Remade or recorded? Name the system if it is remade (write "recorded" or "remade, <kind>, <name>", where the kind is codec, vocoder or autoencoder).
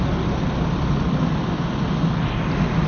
recorded